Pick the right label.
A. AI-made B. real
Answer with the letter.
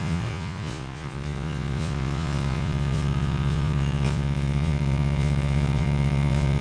A